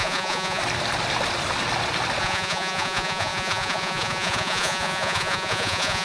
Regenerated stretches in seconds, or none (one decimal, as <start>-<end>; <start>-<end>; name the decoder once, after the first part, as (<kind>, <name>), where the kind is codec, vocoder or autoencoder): 0.0-0.6 (vocoder, Vocos); 2.2-6.0